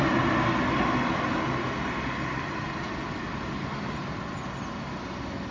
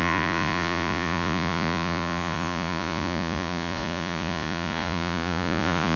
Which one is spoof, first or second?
second